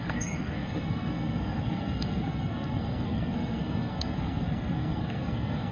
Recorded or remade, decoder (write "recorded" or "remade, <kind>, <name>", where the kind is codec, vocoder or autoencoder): remade, codec, SNAC